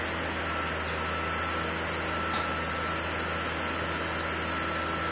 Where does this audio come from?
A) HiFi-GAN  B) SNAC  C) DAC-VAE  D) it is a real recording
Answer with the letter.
D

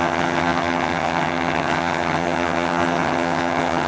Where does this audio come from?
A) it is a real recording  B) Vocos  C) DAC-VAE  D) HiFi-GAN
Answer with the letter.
D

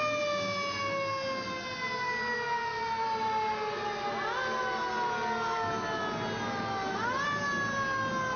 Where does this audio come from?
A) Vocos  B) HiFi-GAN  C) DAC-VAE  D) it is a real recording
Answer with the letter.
D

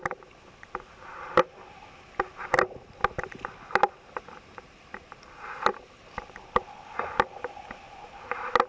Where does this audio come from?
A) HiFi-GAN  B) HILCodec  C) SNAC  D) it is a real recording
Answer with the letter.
D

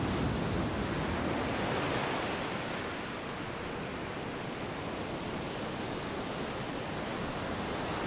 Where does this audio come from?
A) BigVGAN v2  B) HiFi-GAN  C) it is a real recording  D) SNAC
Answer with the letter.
C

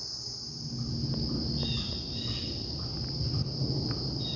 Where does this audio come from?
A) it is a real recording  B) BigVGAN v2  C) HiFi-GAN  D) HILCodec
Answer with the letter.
A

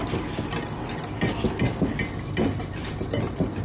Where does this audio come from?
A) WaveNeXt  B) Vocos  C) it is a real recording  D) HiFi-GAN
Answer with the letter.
C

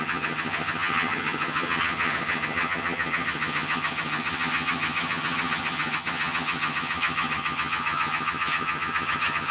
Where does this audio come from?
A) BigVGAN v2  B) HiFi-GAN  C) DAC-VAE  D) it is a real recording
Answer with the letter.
B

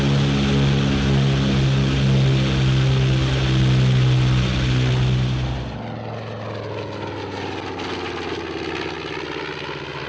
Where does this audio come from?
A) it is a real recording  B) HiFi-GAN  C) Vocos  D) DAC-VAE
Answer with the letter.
A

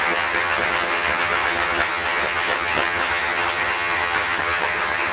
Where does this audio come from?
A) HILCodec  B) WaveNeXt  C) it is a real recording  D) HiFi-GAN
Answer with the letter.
D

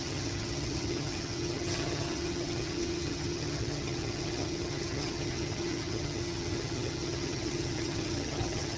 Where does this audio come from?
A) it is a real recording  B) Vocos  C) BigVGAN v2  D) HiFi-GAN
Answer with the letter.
D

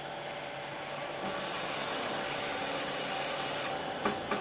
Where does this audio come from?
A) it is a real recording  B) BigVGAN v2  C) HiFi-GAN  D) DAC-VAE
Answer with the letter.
A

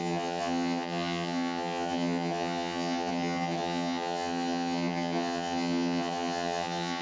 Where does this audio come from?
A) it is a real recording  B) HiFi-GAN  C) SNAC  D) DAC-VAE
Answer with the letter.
B